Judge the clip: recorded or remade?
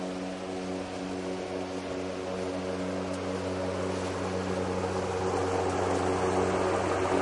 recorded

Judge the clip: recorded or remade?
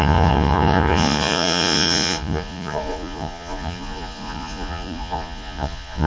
remade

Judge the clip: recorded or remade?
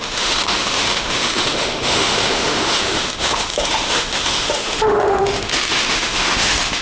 remade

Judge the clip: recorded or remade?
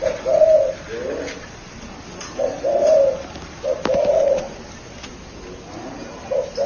recorded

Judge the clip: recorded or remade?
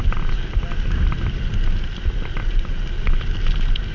recorded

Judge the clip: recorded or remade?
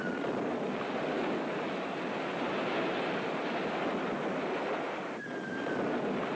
recorded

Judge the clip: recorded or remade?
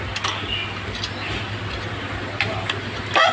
recorded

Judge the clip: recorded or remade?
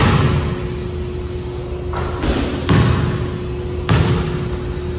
recorded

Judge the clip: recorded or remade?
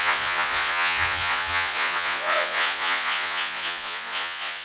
remade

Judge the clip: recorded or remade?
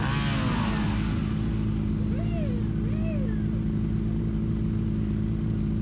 recorded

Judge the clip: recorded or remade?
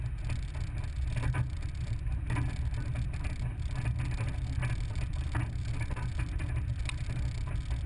recorded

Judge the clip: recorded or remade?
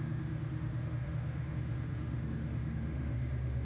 remade